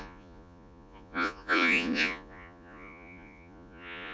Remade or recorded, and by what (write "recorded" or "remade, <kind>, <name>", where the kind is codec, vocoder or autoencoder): remade, vocoder, Vocos